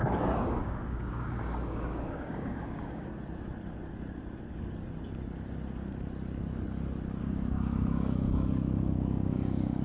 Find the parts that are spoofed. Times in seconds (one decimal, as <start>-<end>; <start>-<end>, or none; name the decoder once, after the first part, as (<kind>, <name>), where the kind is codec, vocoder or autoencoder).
0.0-3.1 (codec, DAC); 7.2-9.8